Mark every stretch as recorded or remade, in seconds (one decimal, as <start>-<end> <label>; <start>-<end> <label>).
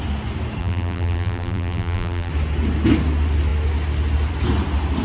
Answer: 0.0-0.6 recorded; 0.6-2.3 remade; 2.3-5.0 recorded